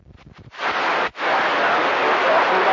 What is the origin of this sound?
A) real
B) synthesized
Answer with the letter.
B